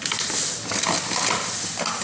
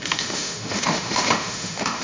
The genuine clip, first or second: first